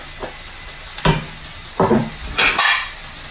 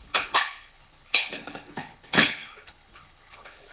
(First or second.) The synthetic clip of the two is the second